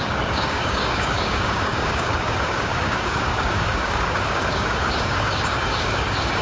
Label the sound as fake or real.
fake